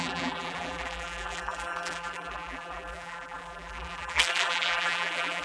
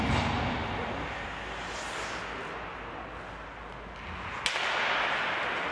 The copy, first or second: first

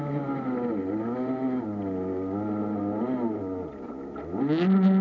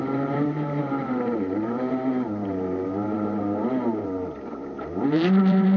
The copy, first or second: second